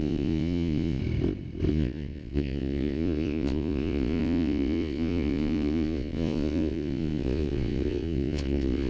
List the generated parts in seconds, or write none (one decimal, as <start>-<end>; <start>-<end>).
0.0-1.0; 1.7-8.9